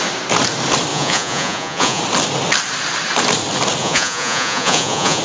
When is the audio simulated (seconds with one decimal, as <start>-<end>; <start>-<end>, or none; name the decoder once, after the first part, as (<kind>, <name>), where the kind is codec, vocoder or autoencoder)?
0.9-2.0 (vocoder, Vocos); 3.8-5.2